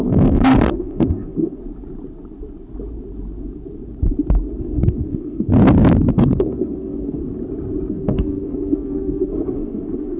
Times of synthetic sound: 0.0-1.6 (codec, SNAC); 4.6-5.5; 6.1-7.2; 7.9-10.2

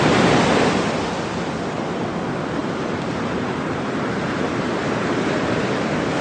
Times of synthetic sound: 2.6-5.6 (vocoder, BigVGAN v2)